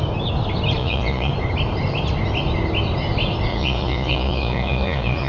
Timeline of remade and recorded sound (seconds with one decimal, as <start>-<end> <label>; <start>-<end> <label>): 0.0-0.8 recorded; 0.8-1.3 remade; 1.3-3.5 recorded; 3.5-5.3 remade

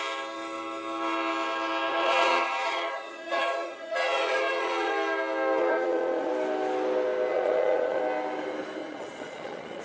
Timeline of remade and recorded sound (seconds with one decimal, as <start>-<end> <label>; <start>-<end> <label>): 0.0-1.9 recorded; 1.9-4.9 remade; 4.9-5.6 recorded; 5.6-6.3 remade; 6.3-7.3 recorded; 7.3-8.0 remade; 8.0-8.8 recorded; 8.8-9.8 remade

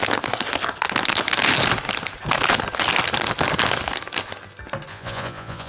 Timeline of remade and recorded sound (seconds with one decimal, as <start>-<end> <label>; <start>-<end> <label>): 0.0-4.9 recorded; 4.9-5.7 remade

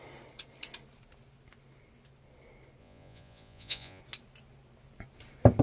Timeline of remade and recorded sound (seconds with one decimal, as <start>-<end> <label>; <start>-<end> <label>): 0.0-2.8 recorded; 2.8-4.0 remade; 4.0-5.6 recorded

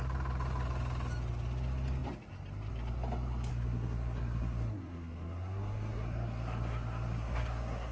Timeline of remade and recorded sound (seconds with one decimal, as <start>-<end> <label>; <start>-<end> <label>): 0.0-3.5 recorded; 3.5-7.9 remade